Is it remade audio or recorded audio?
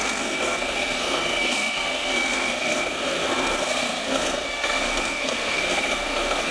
remade